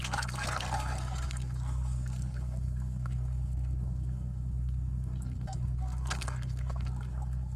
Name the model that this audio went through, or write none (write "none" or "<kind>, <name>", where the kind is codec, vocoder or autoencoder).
codec, SNAC